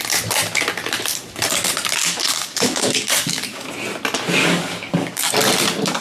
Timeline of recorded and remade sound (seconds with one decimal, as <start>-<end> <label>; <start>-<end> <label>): 0.0-2.0 recorded; 2.0-3.7 remade; 3.7-4.4 recorded; 4.4-5.3 remade; 5.3-6.0 recorded